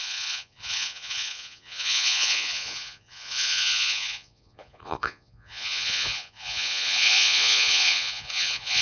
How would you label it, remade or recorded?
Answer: remade